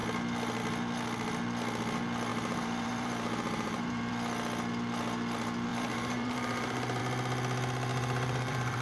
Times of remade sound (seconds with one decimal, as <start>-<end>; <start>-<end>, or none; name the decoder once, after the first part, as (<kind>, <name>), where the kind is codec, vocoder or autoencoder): 2.3-4.1 (vocoder, BigVGAN v2); 5.7-7.0; 7.9-8.8